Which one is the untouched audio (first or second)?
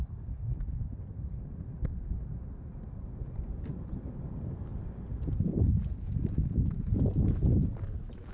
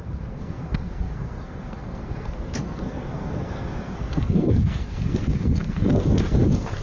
first